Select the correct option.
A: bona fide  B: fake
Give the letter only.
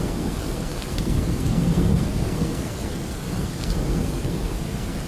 B